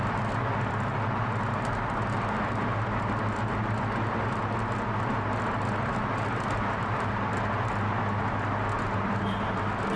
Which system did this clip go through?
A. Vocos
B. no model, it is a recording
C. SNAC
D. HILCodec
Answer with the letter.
B